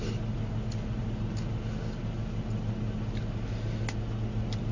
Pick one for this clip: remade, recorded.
recorded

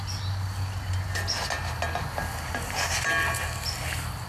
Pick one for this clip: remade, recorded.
recorded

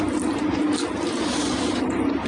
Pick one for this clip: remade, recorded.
recorded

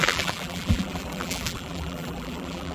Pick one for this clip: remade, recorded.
remade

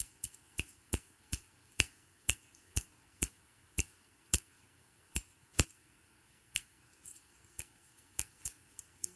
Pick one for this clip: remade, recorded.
remade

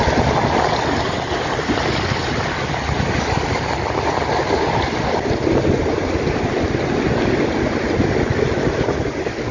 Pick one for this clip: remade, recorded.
recorded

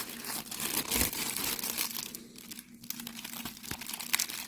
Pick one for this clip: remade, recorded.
recorded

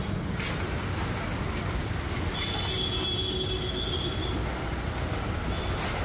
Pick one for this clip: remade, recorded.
recorded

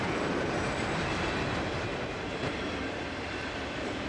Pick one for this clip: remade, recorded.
remade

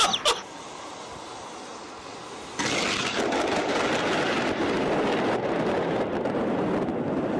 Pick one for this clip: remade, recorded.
recorded